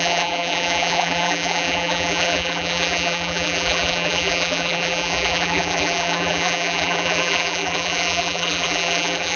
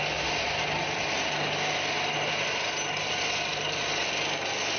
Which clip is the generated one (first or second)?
first